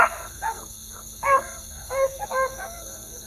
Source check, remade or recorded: remade